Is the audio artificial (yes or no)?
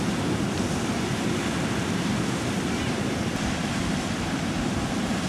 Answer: no